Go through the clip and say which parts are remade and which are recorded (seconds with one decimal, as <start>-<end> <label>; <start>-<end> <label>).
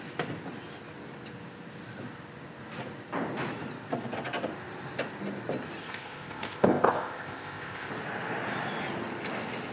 0.0-5.8 recorded; 5.8-7.9 remade; 7.9-9.7 recorded